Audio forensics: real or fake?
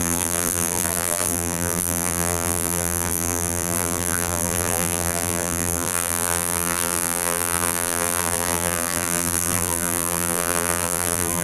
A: fake